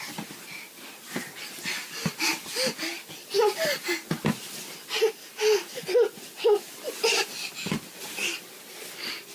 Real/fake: real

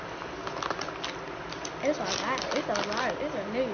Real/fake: real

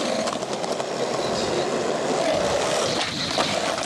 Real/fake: real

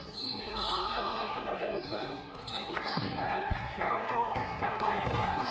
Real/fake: fake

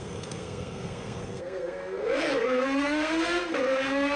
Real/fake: fake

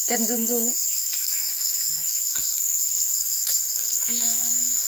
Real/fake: fake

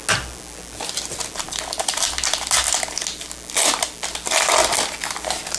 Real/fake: real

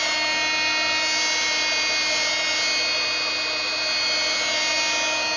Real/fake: real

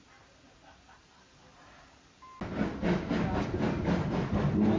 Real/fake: real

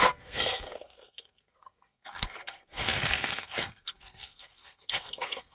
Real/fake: fake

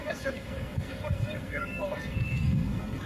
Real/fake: fake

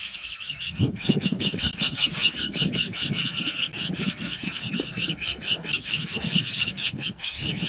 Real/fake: fake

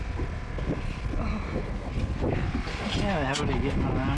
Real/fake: real